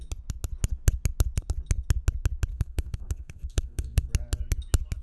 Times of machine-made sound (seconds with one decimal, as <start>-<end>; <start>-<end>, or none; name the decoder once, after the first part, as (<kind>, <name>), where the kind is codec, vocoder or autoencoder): 2.5-4.1 (codec, DAC)